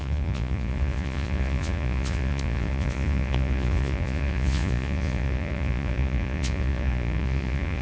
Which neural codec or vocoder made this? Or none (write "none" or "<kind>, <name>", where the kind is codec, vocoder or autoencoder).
vocoder, Vocos